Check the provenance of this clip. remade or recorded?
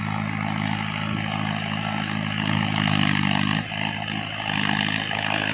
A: recorded